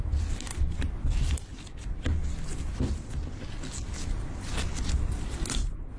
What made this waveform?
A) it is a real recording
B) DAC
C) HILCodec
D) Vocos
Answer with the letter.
A